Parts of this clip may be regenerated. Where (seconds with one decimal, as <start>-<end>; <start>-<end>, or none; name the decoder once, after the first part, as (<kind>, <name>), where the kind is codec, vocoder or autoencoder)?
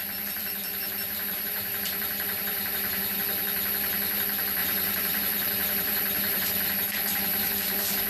0.4-3.2 (vocoder, BigVGAN v2); 4.6-8.1